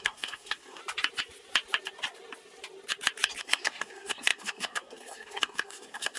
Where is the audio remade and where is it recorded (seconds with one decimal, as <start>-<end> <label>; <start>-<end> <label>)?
0.0-0.8 remade; 0.8-3.4 recorded; 3.4-6.2 remade